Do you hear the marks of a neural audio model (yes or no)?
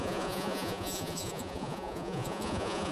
yes